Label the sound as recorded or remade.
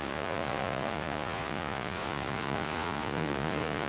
remade